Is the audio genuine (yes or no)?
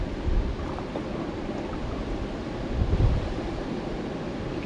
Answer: yes